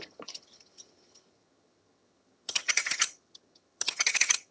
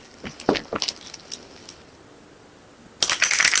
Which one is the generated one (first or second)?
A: first